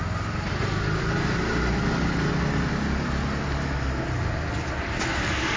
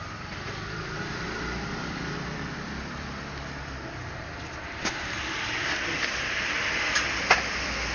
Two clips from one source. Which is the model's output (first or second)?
second